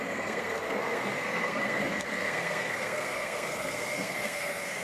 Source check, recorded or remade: remade